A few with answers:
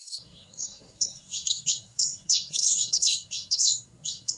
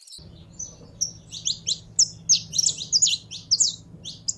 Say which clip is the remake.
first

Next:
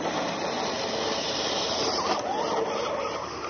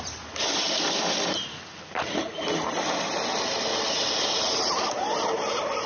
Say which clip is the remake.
second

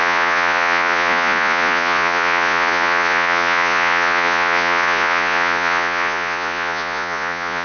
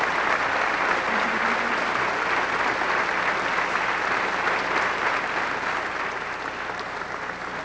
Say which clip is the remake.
first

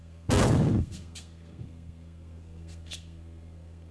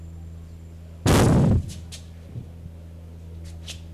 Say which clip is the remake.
first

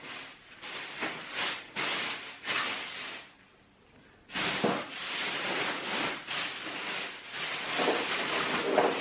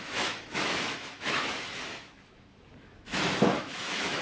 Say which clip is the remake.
second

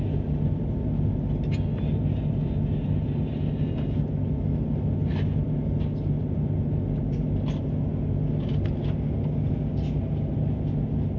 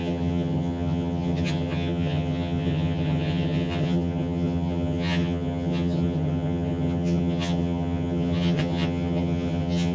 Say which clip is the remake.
second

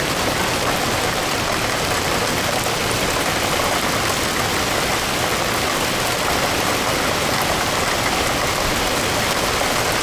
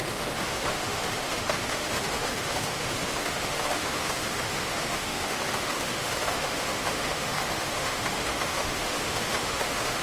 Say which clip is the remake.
second